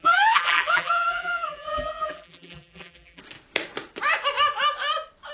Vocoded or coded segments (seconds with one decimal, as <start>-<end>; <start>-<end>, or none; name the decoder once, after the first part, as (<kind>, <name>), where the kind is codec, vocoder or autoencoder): 0.0-3.2 (vocoder, BigVGAN v2)